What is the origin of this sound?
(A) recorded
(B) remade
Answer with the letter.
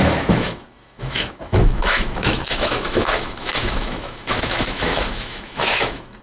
B